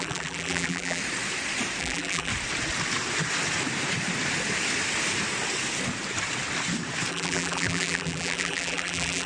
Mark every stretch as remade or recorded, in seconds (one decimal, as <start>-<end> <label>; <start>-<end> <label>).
0.0-1.0 remade; 1.0-1.8 recorded; 1.8-2.3 remade; 2.3-7.1 recorded; 7.1-9.3 remade